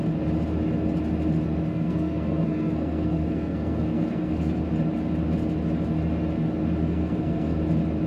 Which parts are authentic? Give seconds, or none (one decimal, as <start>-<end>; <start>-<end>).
0.0-1.7; 4.6-6.8; 7.6-8.1